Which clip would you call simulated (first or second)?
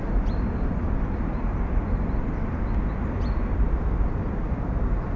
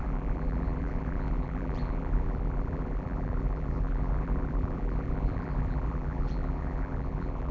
second